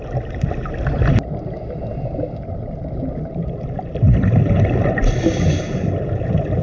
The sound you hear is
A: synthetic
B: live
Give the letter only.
B